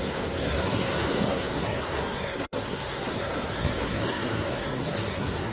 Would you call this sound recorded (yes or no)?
no